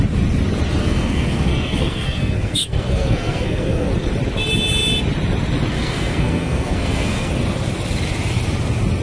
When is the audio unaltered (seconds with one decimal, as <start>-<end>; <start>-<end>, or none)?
0.0-0.8; 3.9-5.7; 7.3-9.0